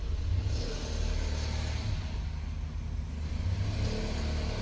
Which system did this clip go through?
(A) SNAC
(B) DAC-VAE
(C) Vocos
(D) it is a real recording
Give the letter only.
D